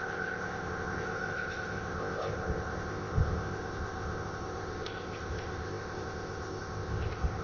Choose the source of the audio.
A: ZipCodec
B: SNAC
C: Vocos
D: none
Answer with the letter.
A